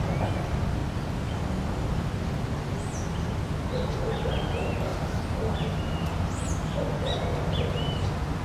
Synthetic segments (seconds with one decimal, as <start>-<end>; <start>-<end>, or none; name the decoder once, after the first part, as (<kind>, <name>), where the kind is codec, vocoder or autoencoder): none